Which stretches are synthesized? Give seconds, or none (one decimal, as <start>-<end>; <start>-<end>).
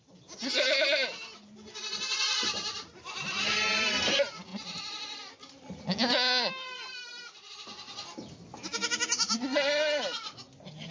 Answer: none